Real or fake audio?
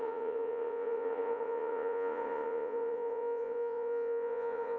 fake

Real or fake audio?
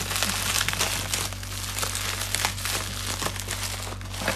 real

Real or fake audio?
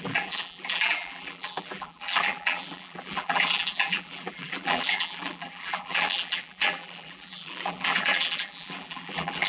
fake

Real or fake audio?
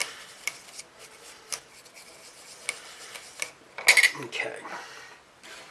real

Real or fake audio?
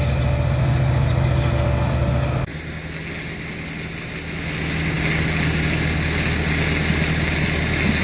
real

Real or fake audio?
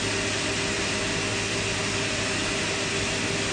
real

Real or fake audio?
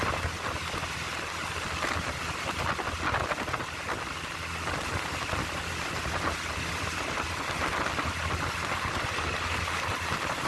real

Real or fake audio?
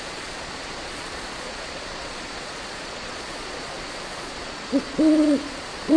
fake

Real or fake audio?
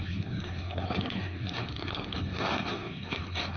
fake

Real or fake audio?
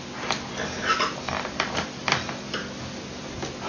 real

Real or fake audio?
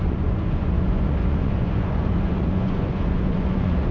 fake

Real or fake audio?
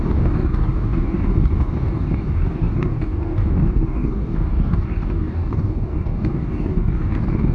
fake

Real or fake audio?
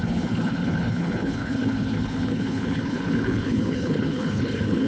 fake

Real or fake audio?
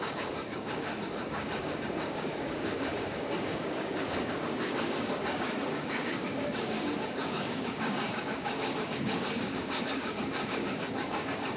fake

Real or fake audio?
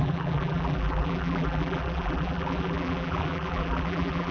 fake